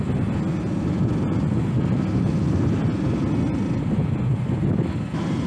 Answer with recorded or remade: recorded